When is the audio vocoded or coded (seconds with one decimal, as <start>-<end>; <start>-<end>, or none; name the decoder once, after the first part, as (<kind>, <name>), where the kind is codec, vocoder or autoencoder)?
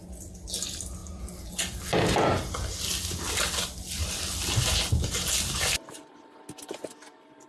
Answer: none